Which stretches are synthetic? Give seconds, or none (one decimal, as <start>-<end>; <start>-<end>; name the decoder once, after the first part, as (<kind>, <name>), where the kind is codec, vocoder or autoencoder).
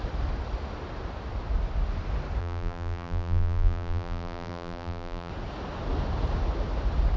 2.4-5.3 (vocoder, BigVGAN v2)